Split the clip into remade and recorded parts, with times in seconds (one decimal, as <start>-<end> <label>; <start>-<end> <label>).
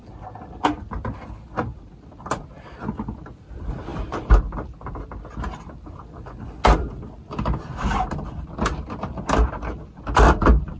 0.0-10.8 recorded